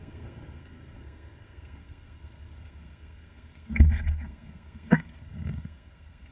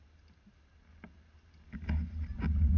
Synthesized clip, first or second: first